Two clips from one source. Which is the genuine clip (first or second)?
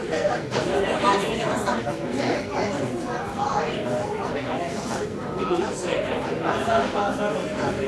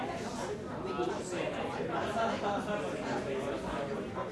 second